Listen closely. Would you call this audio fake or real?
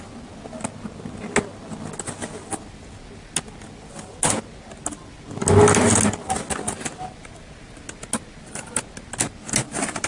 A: real